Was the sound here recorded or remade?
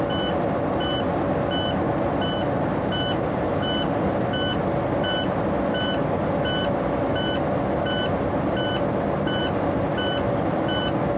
recorded